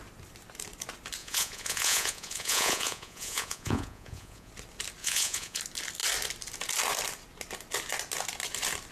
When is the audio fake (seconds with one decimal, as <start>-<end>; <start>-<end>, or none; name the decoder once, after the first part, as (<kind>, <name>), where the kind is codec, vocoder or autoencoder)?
1.2-4.5 (vocoder, Vocos); 5.0-5.6